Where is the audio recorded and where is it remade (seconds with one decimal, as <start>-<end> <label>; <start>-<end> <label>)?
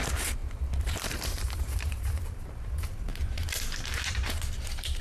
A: 0.0-3.1 remade; 3.1-4.5 recorded; 4.5-5.0 remade